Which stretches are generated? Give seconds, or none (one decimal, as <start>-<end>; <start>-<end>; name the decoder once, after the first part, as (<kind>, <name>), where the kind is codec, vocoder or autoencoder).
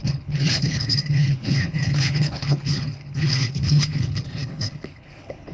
0.0-5.5 (codec, HILCodec)